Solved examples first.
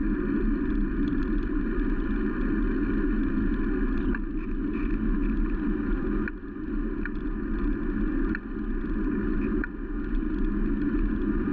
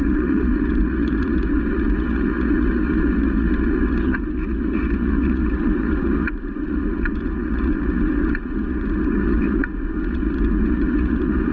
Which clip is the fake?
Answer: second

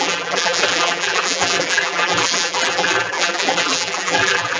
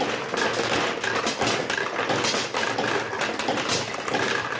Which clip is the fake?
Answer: first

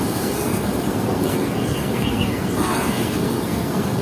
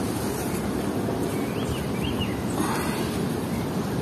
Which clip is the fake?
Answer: first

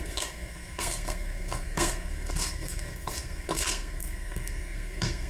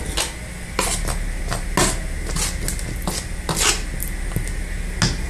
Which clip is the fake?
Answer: first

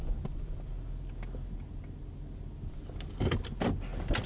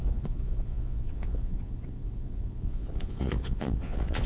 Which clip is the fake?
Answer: second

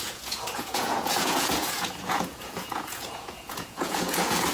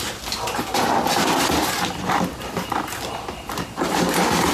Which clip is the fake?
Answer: first